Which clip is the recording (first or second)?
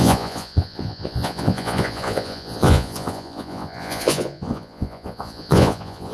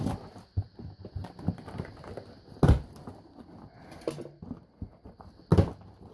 second